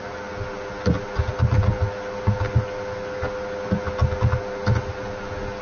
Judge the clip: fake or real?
real